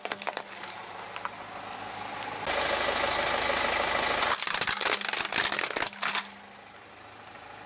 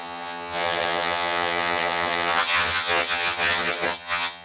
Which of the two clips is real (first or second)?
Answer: first